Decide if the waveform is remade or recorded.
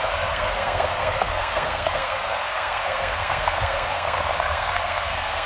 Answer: remade